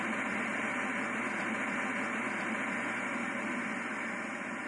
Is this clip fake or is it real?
real